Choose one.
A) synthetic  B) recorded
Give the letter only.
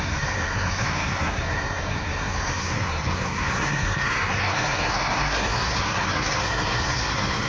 A